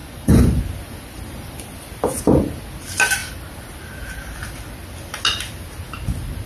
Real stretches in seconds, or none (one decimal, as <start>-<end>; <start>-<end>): 0.6-6.5